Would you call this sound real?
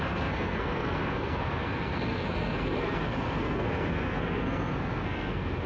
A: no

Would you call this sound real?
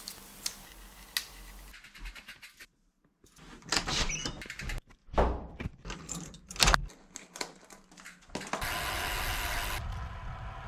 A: yes